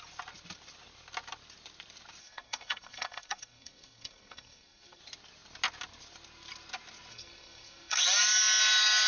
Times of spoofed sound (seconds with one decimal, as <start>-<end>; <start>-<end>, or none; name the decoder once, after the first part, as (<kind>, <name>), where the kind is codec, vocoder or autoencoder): 2.2-5.0 (codec, SNAC); 7.1-8.0